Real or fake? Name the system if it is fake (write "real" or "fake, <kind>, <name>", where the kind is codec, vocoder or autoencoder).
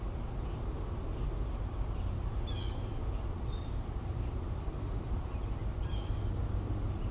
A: real